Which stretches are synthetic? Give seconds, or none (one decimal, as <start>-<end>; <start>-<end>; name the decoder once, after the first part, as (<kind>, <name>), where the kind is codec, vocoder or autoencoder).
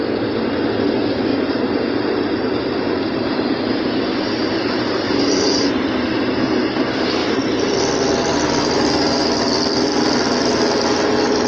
1.3-5.7 (vocoder, BigVGAN v2)